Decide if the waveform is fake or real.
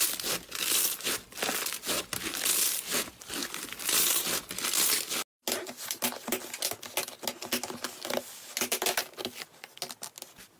real